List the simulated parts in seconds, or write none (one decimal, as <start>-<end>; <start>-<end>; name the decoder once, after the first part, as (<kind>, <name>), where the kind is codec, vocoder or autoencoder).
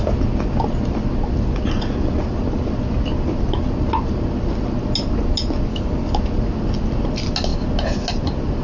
5.7-6.2 (codec, DAC)